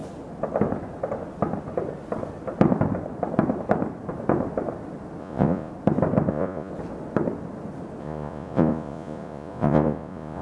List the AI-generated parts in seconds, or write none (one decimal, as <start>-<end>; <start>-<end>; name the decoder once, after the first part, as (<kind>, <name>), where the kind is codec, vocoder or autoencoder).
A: 5.2-5.7 (vocoder, Vocos); 6.3-6.7; 8.0-10.4